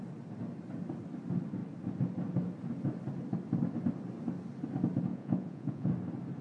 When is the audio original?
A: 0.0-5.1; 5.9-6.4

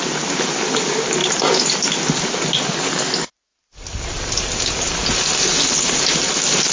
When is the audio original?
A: 0.0-6.7

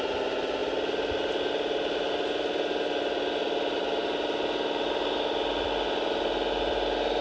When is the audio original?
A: 0.0-7.2

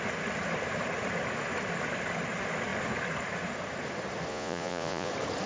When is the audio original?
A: 0.0-4.3; 5.1-5.5

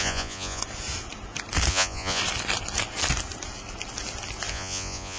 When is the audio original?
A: 0.6-1.7; 2.2-4.5